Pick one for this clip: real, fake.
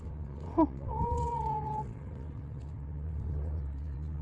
fake